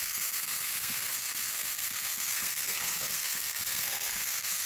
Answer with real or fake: fake